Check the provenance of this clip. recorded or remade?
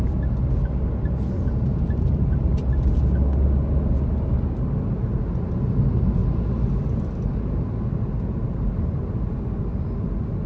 recorded